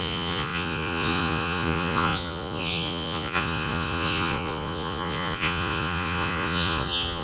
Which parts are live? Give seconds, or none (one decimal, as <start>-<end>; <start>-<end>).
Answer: none

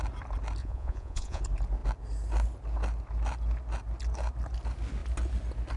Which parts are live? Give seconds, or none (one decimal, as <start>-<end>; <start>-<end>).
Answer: 0.0-0.6; 1.4-5.8

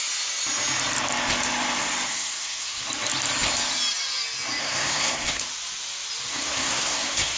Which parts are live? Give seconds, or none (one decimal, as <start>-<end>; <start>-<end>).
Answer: 0.0-2.1; 2.8-4.6; 5.4-6.3

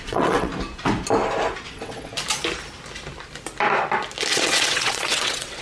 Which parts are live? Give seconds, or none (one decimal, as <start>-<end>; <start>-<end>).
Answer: 0.5-1.7; 2.1-4.3